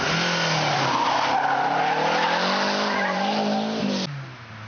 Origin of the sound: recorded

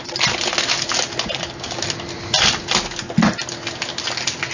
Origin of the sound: recorded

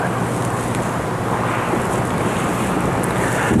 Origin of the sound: recorded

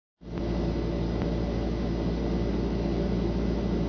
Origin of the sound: recorded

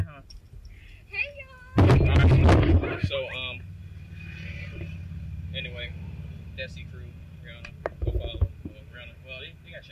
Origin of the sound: recorded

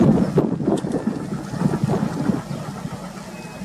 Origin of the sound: recorded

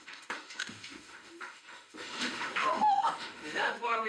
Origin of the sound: remade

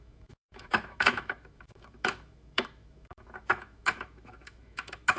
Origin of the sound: remade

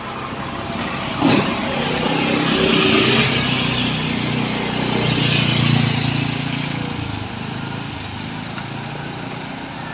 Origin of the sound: recorded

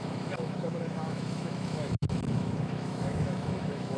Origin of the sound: remade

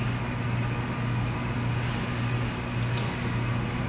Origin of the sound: recorded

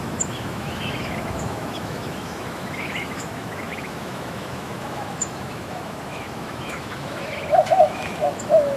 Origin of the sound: remade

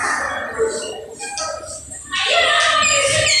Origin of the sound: recorded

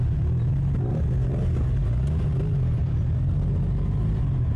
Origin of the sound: recorded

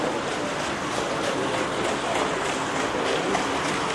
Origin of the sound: recorded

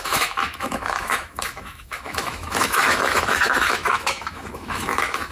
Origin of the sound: remade